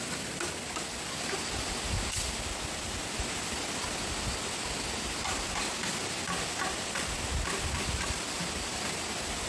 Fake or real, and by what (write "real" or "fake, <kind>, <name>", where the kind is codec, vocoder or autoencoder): real